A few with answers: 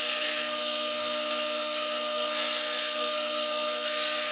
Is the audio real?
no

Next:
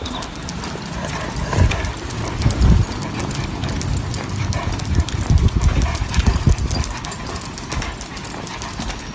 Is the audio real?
yes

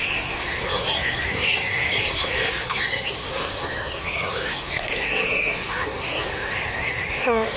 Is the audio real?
no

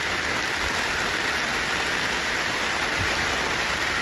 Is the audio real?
yes